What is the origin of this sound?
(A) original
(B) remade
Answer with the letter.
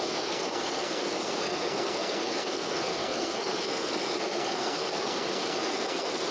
B